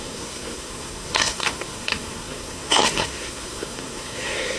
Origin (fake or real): fake